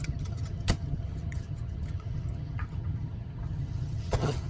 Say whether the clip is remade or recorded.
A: remade